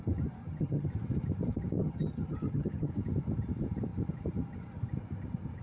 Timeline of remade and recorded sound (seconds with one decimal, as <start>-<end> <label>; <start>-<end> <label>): 0.0-0.4 recorded; 0.4-0.9 remade; 0.9-1.8 recorded; 1.8-2.9 remade; 2.9-5.6 recorded

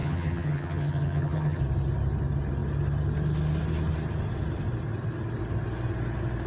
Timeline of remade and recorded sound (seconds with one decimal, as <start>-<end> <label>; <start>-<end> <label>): 0.0-1.6 remade; 1.6-6.5 recorded

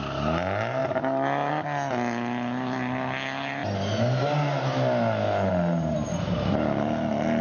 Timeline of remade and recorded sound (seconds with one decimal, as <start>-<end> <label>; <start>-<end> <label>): 0.0-7.4 recorded

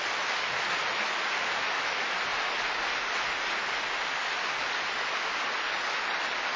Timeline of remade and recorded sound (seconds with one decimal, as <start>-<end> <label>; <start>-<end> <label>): 0.0-6.6 recorded

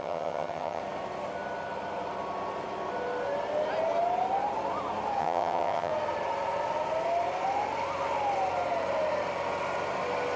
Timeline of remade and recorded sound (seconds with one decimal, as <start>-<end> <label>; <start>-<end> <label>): 0.0-0.8 remade; 0.8-5.2 recorded; 5.2-5.9 remade; 5.9-10.4 recorded

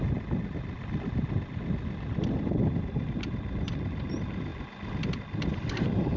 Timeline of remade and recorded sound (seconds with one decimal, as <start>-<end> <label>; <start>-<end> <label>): 0.0-6.2 recorded

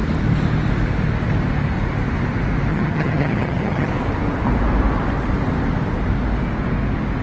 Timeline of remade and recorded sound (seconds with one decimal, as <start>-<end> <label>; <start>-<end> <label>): 0.0-2.7 recorded; 2.7-3.9 remade; 3.9-7.2 recorded

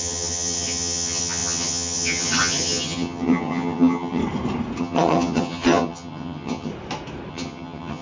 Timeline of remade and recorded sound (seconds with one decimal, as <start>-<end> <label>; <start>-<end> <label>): 0.0-4.2 remade; 4.2-4.8 recorded; 4.8-6.7 remade; 6.7-7.3 recorded; 7.3-8.0 remade